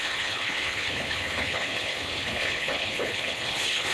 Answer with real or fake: fake